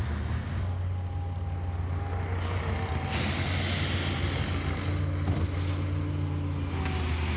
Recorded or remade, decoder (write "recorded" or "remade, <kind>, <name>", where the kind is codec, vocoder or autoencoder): recorded